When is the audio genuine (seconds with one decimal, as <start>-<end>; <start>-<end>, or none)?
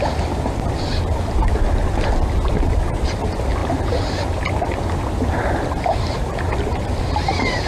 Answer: 0.0-7.7